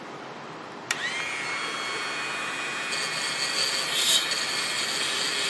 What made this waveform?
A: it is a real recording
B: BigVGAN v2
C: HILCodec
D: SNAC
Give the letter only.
A